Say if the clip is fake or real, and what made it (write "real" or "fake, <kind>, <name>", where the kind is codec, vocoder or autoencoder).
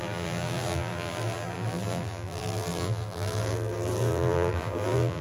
fake, vocoder, BigVGAN v2